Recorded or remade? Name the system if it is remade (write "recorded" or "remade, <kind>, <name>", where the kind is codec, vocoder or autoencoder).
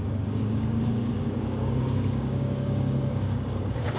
remade, codec, DAC